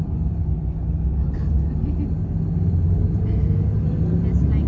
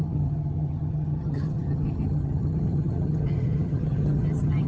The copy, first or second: second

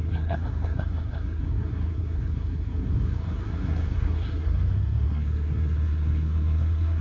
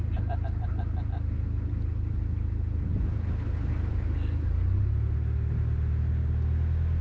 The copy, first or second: first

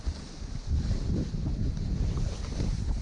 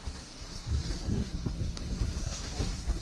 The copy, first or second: second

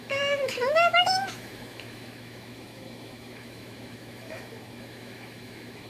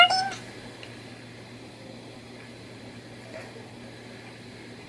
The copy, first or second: first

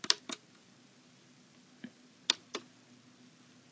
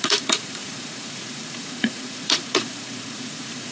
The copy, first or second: second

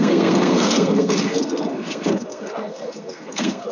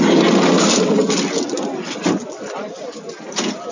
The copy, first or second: first